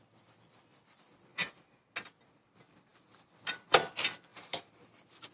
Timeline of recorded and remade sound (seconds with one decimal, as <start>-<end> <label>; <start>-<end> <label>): 0.0-1.3 remade; 1.3-2.3 recorded; 2.3-4.3 remade; 4.3-5.3 recorded